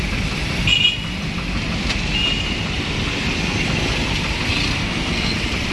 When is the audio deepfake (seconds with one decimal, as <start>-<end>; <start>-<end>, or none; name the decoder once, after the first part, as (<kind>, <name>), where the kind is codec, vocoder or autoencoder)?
4.8-5.3 (codec, SNAC)